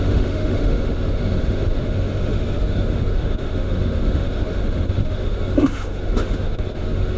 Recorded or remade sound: remade